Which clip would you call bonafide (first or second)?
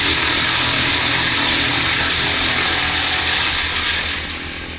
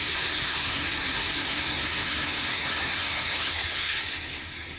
first